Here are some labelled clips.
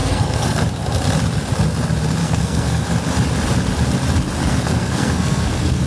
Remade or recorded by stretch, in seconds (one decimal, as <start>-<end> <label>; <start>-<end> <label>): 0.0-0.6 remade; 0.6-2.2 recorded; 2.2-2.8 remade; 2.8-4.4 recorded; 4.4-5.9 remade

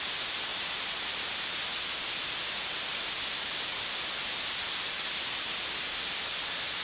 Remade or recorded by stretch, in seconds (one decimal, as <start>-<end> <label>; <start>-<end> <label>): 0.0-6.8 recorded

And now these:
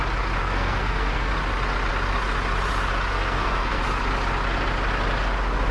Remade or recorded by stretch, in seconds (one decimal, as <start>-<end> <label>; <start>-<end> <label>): 0.0-0.4 recorded; 0.4-1.3 remade; 1.3-3.1 recorded; 3.1-3.8 remade; 3.8-5.7 recorded

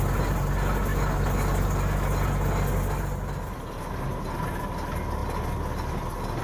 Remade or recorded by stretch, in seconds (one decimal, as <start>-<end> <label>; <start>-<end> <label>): 0.0-6.4 recorded

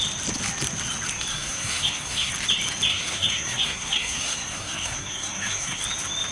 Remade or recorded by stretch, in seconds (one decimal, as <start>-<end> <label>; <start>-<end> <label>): 0.0-1.3 recorded; 1.3-2.3 remade; 2.3-2.9 recorded; 2.9-5.8 remade; 5.8-6.3 recorded